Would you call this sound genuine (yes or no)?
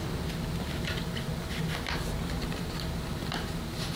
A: yes